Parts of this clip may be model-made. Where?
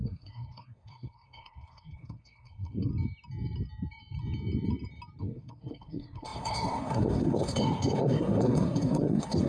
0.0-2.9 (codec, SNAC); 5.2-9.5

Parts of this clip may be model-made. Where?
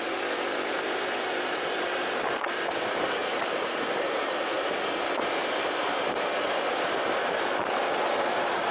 0.0-8.7 (vocoder, BigVGAN v2)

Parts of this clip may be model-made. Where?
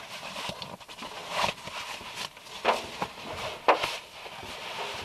none